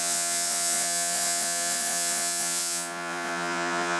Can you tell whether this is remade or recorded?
remade